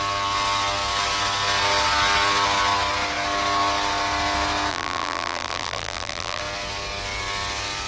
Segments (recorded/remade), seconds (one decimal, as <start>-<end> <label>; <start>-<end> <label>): 0.0-4.7 recorded; 4.7-6.4 remade; 6.4-7.9 recorded